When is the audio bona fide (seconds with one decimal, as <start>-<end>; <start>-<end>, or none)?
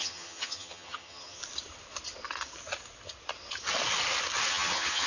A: 1.4-4.5